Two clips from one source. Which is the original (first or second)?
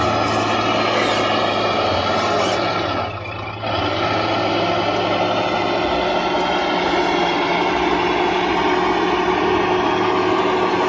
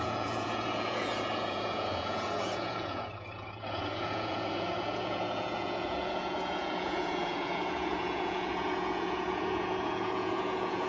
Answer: first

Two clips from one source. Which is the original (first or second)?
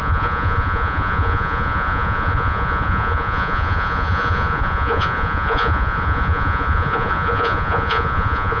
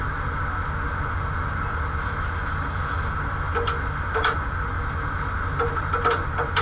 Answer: second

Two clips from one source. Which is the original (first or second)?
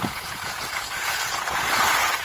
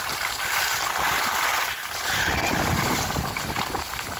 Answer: second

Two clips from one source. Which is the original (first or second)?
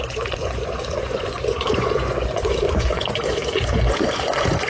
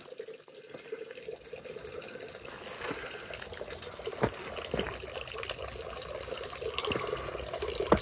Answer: second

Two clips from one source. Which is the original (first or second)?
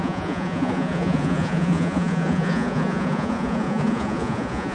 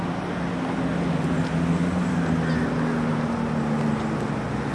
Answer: second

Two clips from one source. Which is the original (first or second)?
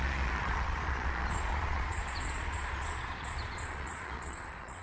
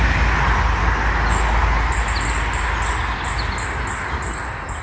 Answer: second